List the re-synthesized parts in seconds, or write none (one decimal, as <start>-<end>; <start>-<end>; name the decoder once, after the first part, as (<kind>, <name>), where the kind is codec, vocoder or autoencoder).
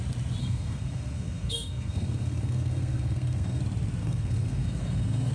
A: 0.4-3.6 (codec, SNAC); 4.0-5.3